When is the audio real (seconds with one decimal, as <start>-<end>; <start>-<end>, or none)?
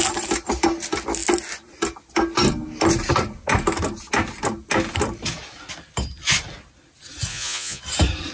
0.0-7.3; 7.8-8.3